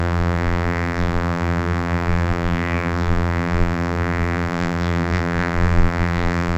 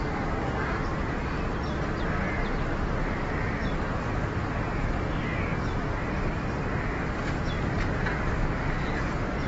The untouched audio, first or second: second